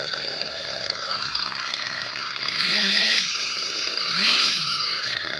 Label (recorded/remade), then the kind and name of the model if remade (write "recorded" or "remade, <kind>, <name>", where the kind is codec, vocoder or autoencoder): remade, codec, SNAC